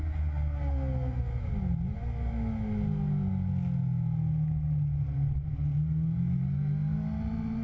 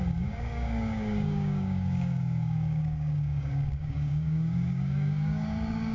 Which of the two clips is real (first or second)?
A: first